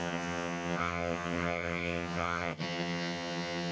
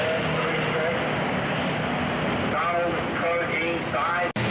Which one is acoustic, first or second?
second